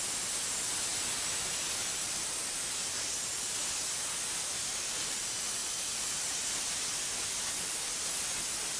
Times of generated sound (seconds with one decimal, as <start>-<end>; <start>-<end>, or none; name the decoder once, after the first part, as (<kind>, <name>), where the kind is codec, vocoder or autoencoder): 5.6-7.0 (vocoder, BigVGAN v2)